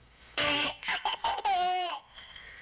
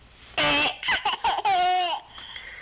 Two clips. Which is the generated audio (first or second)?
first